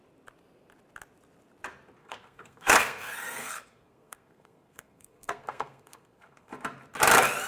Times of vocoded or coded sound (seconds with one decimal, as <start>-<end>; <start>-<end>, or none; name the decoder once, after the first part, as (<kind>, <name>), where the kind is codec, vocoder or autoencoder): 2.0-6.5 (codec, SNAC)